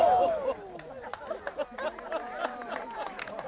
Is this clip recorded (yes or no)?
yes